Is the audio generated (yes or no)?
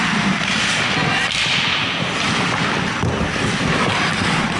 no